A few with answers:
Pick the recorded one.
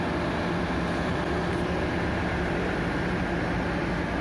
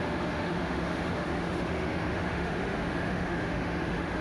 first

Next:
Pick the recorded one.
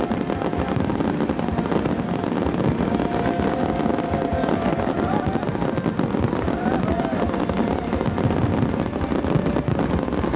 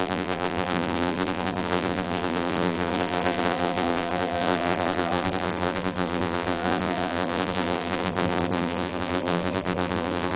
first